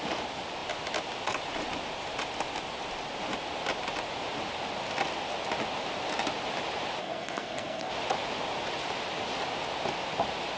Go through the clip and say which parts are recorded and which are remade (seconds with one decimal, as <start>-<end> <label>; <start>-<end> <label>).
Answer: 0.0-7.0 recorded; 7.0-7.9 remade; 7.9-10.6 recorded